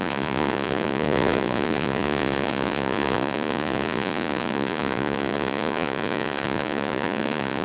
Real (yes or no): no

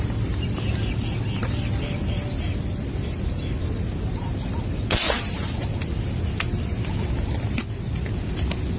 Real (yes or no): yes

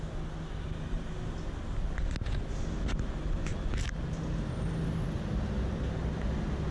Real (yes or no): yes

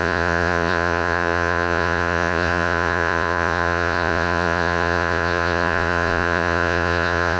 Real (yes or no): no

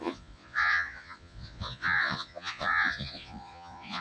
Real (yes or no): no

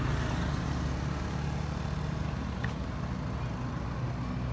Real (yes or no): yes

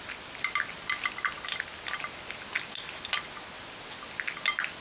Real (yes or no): yes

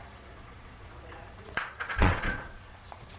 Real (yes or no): no